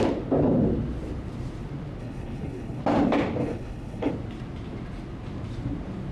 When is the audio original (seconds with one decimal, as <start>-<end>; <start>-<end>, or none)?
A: 0.0-2.0; 2.8-3.4; 4.1-6.1

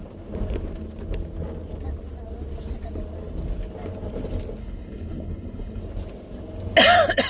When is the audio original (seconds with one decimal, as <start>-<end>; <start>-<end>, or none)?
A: 0.0-4.6; 5.8-7.3